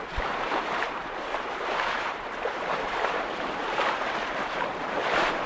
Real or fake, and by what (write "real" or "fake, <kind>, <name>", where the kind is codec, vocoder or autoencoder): fake, vocoder, BigVGAN v2